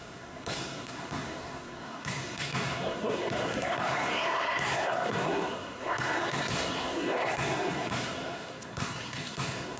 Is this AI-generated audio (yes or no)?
yes